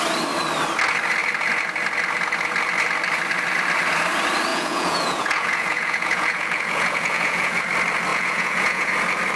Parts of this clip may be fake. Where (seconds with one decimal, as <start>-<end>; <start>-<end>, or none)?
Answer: 4.5-7.6; 8.1-8.9